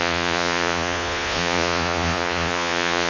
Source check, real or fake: fake